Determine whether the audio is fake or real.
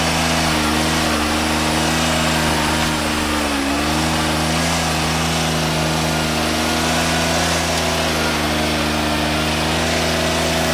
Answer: real